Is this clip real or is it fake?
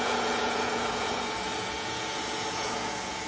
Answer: fake